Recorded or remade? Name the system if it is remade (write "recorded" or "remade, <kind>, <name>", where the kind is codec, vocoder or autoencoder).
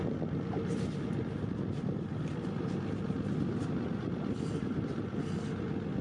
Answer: recorded